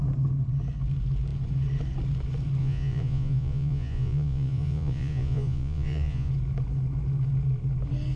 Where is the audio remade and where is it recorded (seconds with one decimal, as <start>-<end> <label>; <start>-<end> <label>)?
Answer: 0.0-2.6 recorded; 2.6-6.3 remade; 6.3-8.2 recorded